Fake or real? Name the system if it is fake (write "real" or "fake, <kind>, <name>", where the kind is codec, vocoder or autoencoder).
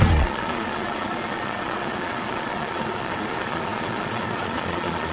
fake, vocoder, Vocos